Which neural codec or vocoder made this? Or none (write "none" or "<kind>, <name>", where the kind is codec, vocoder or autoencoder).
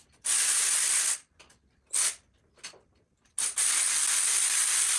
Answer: none